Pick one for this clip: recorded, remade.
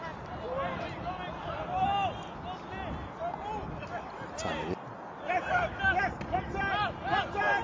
recorded